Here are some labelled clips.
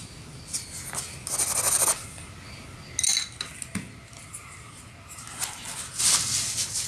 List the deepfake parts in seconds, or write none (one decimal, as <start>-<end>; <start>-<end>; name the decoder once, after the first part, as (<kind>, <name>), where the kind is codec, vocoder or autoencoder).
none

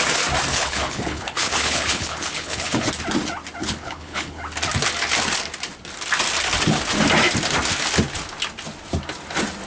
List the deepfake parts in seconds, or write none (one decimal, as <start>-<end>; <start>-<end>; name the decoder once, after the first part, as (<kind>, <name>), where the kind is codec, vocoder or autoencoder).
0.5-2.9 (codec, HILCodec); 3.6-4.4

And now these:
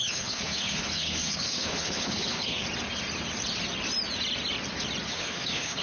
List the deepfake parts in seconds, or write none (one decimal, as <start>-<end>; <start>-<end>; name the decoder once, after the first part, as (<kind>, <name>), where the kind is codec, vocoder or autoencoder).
0.0-2.6 (codec, HILCodec); 5.1-5.8